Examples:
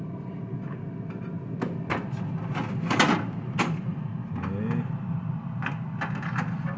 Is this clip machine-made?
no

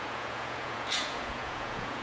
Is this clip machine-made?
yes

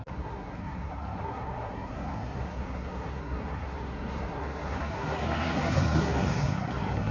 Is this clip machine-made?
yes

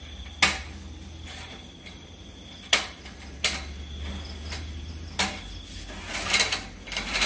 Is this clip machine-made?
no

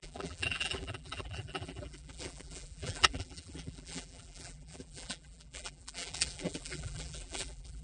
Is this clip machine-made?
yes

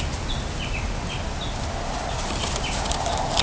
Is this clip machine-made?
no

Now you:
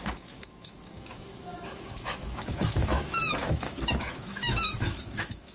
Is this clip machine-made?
yes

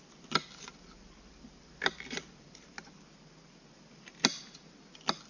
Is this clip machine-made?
no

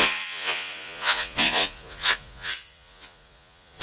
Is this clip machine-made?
yes